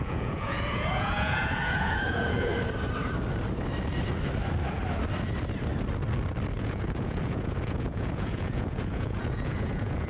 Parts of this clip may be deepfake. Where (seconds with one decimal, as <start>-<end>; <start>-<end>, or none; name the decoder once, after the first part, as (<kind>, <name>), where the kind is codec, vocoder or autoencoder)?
0.0-2.5 (vocoder, Vocos); 6.6-10.1